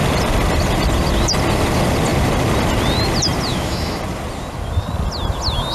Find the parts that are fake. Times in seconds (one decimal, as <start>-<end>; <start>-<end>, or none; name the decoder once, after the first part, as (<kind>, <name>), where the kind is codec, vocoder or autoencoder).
3.5-4.0 (autoencoder, DAC-VAE)

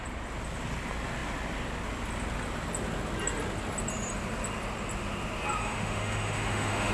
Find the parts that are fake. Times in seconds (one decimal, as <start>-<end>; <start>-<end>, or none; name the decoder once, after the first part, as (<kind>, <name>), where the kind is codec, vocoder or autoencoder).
5.6-6.9 (autoencoder, DAC-VAE)

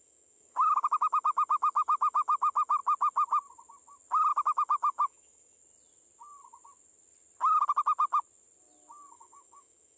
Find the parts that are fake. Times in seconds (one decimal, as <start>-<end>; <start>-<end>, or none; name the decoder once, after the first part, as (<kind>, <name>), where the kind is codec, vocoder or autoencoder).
0.0-2.8 (autoencoder, DAC-VAE); 4.3-5.6; 9.1-10.0

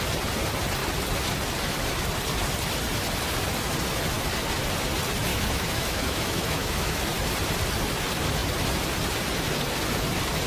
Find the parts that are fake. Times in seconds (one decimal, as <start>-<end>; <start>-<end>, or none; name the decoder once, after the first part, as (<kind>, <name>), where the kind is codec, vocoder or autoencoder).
5.3-7.0 (autoencoder, DAC-VAE)

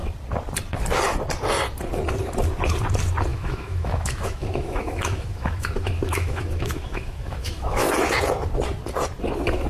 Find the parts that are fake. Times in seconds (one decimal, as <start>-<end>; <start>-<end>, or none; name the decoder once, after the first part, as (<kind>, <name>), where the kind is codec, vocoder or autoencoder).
3.3-7.9 (autoencoder, DAC-VAE)

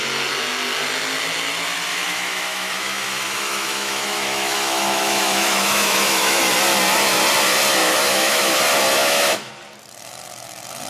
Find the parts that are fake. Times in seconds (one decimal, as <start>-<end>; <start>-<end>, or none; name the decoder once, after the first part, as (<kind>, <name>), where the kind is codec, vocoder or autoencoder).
1.9-6.4 (autoencoder, DAC-VAE); 7.8-8.6; 9.0-9.5

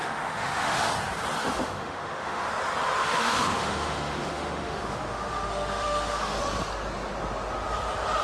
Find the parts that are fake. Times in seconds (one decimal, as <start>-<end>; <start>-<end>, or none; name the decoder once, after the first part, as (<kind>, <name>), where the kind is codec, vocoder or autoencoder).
0.0-0.9 (autoencoder, DAC-VAE); 1.4-2.5; 3.0-6.4